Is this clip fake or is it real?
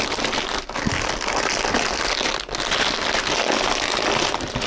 real